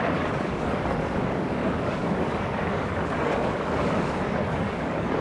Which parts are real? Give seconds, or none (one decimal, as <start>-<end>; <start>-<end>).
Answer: none